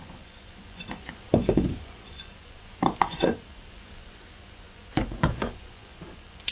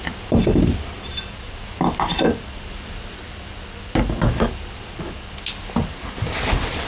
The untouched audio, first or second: second